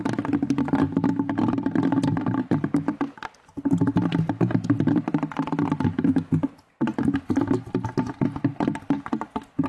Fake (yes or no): no